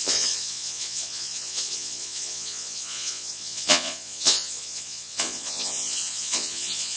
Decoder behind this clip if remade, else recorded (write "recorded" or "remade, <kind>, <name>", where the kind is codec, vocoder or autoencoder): remade, vocoder, Vocos